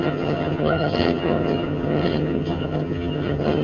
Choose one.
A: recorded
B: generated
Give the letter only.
B